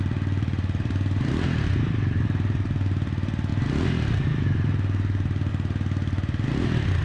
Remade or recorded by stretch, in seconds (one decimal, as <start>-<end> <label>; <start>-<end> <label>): 0.0-3.5 remade; 3.5-4.1 recorded; 4.1-5.5 remade; 5.5-6.6 recorded; 6.6-7.0 remade

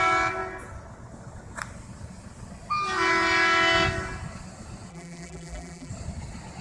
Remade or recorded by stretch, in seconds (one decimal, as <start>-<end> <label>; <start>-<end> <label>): 0.0-4.9 recorded; 4.9-5.9 remade; 5.9-6.6 recorded

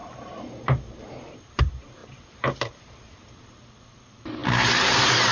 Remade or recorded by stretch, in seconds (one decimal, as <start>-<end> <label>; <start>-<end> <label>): 0.0-5.3 remade

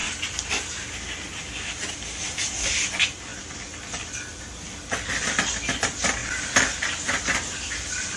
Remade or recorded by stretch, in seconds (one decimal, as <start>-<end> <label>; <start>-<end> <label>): 0.0-2.5 remade; 2.5-3.3 recorded; 3.3-4.4 remade; 4.4-8.2 recorded